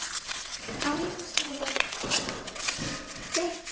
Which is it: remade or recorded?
remade